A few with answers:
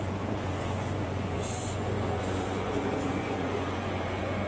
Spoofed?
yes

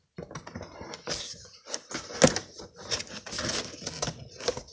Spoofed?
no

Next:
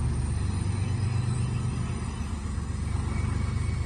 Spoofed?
no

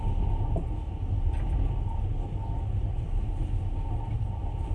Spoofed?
no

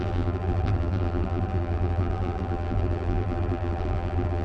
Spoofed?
yes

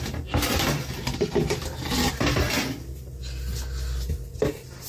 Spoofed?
no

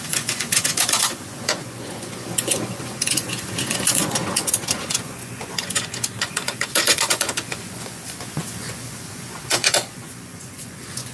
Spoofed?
yes